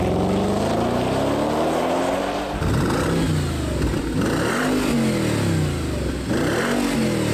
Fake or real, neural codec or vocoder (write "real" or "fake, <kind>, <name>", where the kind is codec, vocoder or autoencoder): real